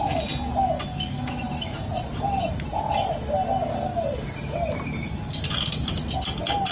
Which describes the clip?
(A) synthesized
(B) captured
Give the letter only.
B